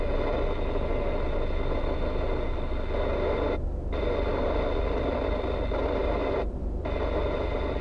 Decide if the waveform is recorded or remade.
recorded